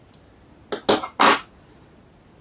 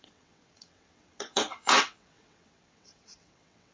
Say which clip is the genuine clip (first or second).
first